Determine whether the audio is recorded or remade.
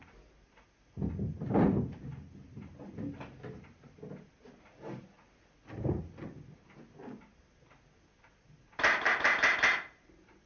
recorded